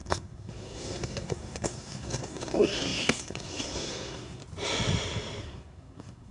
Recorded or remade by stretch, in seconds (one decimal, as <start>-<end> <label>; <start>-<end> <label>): 0.0-4.4 remade; 4.4-5.4 recorded; 5.4-6.3 remade